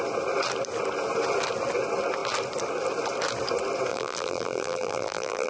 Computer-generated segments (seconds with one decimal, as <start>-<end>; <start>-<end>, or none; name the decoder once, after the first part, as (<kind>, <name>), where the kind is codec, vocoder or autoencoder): 3.9-5.5 (vocoder, BigVGAN v2)